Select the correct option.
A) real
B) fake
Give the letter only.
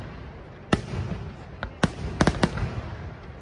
A